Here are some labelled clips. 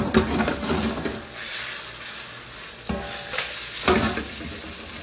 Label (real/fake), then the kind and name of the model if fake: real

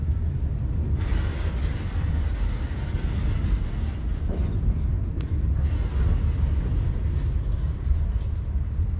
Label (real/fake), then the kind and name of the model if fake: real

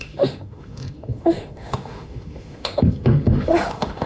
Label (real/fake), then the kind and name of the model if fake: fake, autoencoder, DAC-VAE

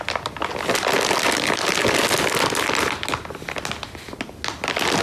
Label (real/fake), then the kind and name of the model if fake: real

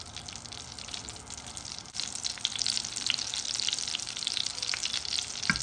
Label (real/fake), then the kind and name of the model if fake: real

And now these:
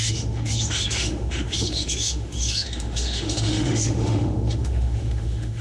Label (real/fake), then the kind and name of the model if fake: fake, autoencoder, DAC-VAE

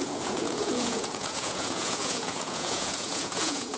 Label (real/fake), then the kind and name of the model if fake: fake, vocoder, Vocos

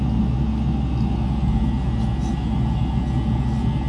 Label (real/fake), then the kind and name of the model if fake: real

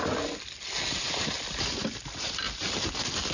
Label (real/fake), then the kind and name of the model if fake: real